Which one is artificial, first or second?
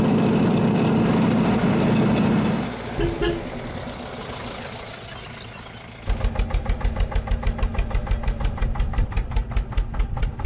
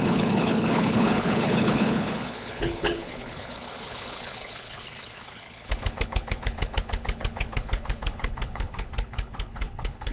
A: second